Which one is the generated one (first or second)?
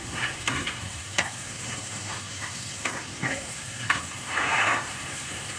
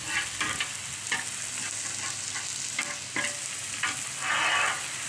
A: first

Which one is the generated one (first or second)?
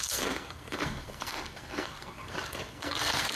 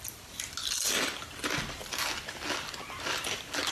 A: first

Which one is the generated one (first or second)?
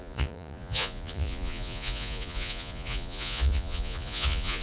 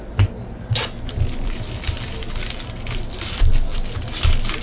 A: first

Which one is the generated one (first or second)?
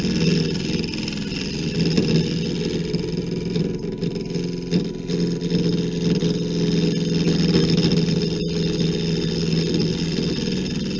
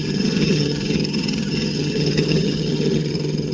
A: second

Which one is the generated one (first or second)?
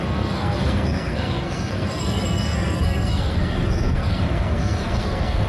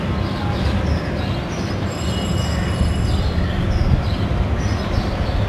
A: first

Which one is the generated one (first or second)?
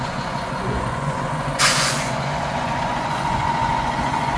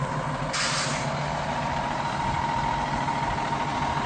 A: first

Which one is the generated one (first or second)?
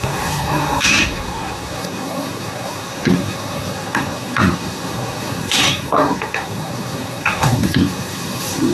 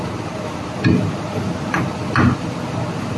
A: first